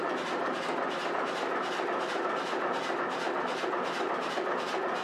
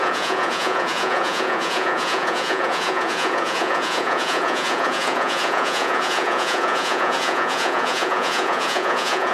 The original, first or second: first